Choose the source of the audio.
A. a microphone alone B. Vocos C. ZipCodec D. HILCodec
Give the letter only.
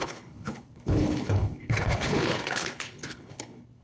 D